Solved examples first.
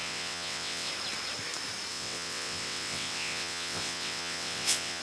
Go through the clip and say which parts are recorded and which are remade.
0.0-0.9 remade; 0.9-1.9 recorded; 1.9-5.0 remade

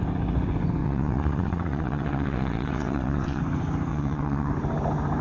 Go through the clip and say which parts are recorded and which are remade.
0.0-0.8 recorded; 0.8-3.4 remade; 3.4-3.9 recorded; 3.9-4.5 remade; 4.5-5.2 recorded

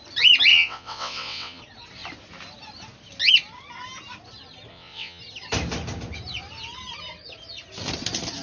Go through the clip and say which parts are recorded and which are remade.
0.0-0.5 recorded; 0.5-1.6 remade; 1.6-4.7 recorded; 4.7-5.2 remade; 5.2-8.4 recorded

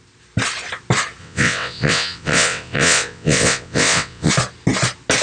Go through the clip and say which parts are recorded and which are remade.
0.0-1.2 recorded; 1.2-4.3 remade; 4.3-5.2 recorded

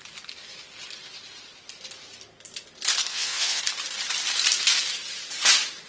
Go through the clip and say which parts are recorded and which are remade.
0.0-3.1 recorded; 3.1-3.6 remade; 3.6-5.9 recorded

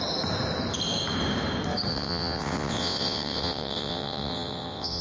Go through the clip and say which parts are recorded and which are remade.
0.0-1.9 recorded; 1.9-5.0 remade